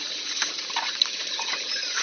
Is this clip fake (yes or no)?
yes